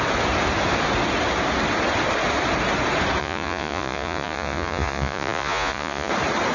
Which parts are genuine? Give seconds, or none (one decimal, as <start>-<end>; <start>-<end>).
0.0-3.2; 6.1-6.5